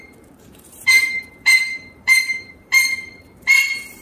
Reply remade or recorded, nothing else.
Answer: remade